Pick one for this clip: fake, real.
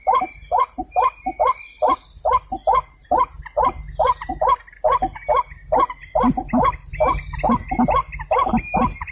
fake